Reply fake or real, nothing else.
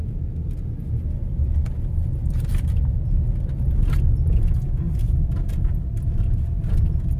real